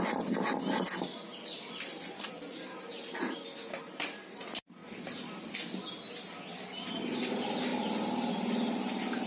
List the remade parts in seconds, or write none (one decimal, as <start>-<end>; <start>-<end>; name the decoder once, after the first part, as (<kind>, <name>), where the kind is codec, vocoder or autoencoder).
none